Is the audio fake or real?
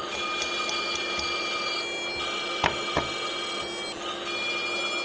real